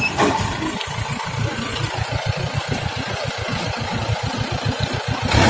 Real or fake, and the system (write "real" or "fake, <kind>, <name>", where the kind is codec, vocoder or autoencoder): real